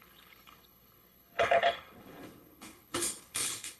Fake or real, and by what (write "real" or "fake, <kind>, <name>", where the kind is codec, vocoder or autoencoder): fake, codec, HILCodec